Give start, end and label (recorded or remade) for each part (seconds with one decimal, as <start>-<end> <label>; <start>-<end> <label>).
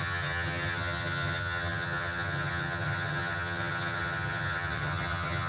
0.0-5.5 remade